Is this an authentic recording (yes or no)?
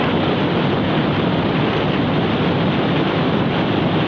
no